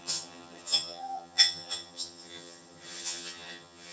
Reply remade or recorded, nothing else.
remade